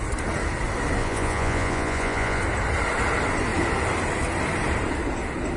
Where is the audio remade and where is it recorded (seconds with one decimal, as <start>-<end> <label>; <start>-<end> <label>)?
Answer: 0.0-1.0 recorded; 1.0-2.4 remade; 2.4-5.6 recorded